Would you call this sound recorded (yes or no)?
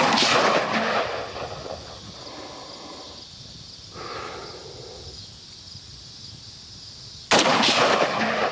yes